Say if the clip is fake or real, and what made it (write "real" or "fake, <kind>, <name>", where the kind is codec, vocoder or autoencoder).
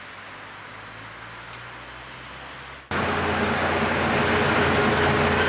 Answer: real